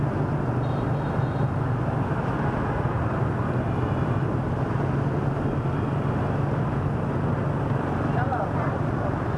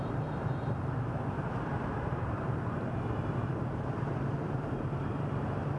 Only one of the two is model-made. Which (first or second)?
second